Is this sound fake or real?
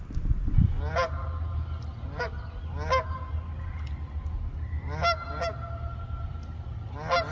real